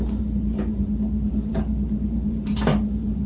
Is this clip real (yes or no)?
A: no